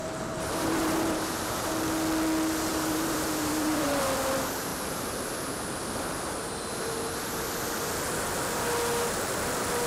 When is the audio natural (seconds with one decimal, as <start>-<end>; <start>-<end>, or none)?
1.7-2.7; 4.0-4.7; 5.8-9.9